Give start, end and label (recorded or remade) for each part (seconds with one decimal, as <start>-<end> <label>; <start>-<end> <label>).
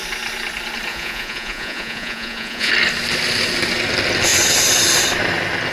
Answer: 0.0-0.9 recorded; 0.9-2.7 remade; 2.7-5.7 recorded